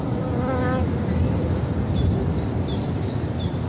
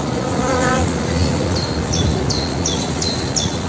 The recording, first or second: first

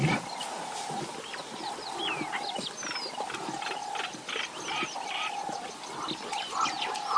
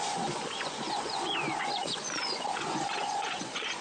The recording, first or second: first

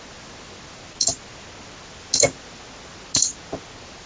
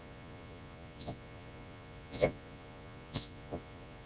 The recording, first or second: first